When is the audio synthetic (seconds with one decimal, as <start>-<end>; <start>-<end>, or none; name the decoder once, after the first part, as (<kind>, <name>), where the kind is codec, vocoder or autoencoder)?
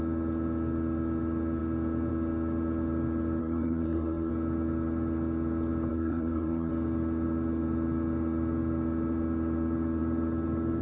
3.4-4.3 (codec, SNAC); 5.9-6.7